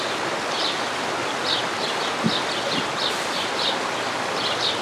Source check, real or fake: real